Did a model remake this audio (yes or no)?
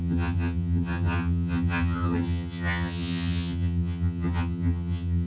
yes